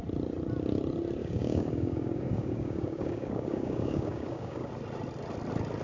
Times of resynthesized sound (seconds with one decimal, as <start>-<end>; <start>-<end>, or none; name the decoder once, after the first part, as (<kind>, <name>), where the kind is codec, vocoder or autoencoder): 1.2-4.7 (codec, DAC)